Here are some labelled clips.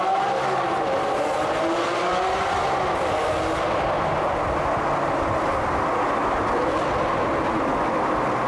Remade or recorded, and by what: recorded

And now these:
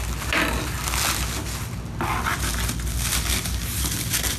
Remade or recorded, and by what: recorded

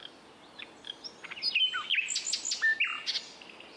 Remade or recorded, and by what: recorded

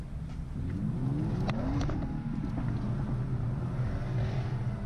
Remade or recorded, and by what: recorded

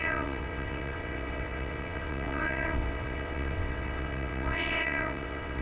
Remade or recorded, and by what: remade, vocoder, WaveNeXt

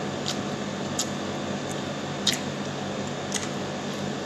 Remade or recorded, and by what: recorded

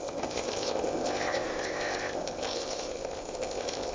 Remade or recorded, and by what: remade, codec, ZipCodec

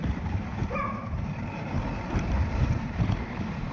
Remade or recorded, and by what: remade, vocoder, BigVGAN v2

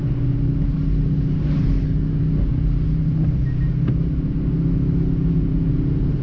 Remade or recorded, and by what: recorded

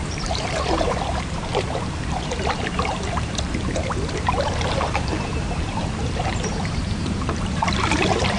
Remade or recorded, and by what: remade, vocoder, BigVGAN v2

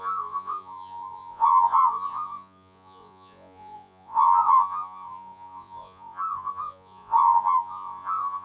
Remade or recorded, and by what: remade, vocoder, Vocos